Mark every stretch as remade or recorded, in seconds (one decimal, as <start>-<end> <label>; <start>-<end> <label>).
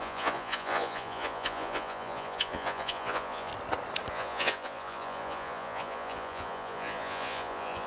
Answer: 0.0-3.5 remade; 3.5-4.1 recorded; 4.1-7.9 remade